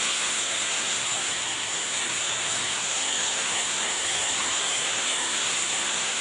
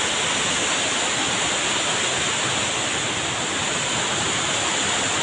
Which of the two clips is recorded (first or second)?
second